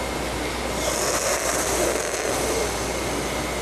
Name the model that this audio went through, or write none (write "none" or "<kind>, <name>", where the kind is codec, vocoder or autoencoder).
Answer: none